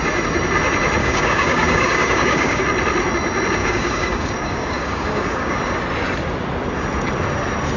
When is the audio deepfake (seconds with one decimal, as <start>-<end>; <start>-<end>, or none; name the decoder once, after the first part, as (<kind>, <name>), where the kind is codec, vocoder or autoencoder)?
1.0-2.6 (codec, DAC); 3.6-5.6